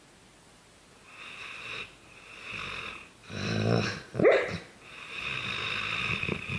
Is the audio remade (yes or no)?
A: no